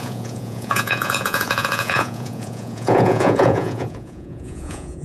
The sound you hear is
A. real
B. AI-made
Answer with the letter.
B